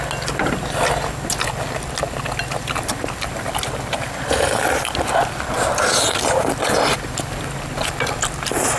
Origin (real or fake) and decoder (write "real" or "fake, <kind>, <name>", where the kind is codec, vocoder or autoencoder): real